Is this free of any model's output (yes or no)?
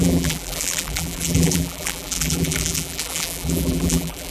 no